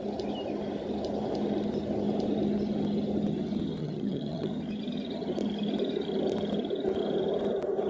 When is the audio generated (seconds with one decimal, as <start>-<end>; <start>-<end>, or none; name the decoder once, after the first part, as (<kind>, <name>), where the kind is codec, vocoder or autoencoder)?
3.8-4.5 (vocoder, HiFi-GAN)